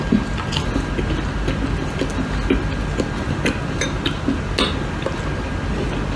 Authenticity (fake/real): real